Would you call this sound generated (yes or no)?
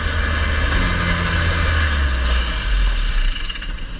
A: no